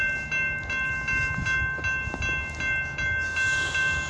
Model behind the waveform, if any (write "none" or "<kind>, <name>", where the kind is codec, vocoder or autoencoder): none